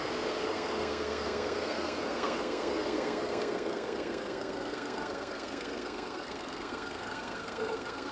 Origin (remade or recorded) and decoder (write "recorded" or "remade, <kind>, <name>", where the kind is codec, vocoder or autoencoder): remade, codec, SNAC